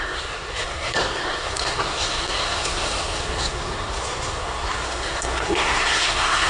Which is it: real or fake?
fake